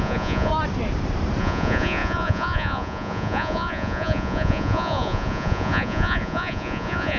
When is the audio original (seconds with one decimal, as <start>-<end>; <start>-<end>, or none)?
0.5-1.4